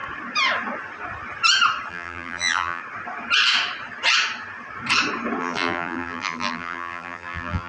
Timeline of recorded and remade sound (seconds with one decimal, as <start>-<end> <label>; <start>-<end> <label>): 0.0-1.9 recorded; 1.9-2.8 remade; 2.8-5.4 recorded; 5.4-7.7 remade